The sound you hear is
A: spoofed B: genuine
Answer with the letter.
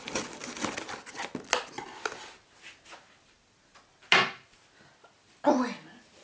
B